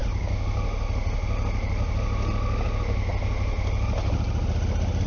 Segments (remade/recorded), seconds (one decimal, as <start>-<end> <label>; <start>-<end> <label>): 0.0-5.1 recorded